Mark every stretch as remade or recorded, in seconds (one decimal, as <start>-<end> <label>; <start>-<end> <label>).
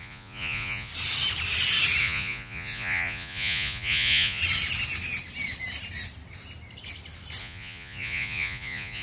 0.0-0.9 remade; 0.9-2.0 recorded; 2.0-4.4 remade; 4.4-7.4 recorded; 7.4-9.0 remade